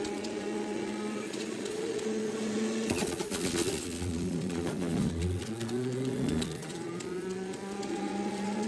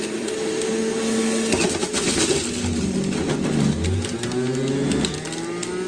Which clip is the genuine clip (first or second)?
second